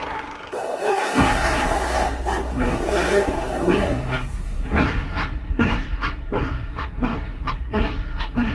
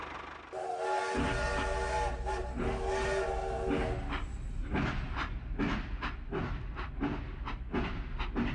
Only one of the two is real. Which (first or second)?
second